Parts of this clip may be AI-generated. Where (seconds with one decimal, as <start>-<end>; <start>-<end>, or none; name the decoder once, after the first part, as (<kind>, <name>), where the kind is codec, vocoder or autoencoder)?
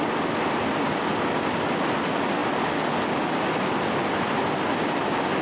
none